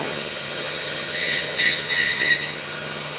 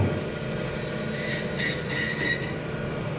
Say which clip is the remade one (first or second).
first